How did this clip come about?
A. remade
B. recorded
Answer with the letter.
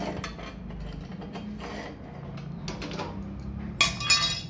B